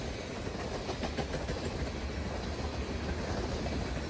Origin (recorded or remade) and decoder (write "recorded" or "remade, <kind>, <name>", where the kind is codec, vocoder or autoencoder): recorded